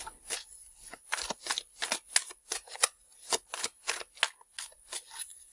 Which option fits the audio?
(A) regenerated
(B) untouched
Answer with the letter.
B